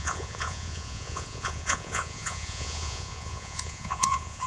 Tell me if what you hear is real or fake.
fake